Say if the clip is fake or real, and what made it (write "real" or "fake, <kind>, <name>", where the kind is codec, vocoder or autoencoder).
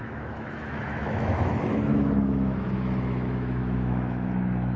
fake, autoencoder, DAC-VAE